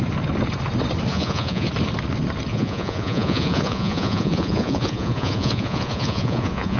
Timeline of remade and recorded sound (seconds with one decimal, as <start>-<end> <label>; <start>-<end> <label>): 0.0-1.1 recorded; 1.1-1.7 remade; 1.7-2.5 recorded; 2.5-6.8 remade